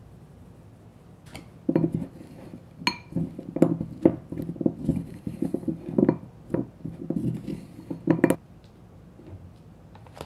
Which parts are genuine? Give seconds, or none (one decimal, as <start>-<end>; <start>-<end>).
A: 0.0-4.9; 6.0-10.3